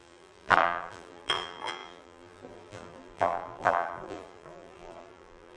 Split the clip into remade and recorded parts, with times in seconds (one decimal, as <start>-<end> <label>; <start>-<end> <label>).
0.0-5.6 remade